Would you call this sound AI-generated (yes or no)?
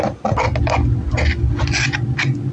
no